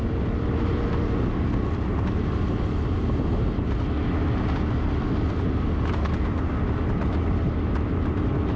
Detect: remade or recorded recorded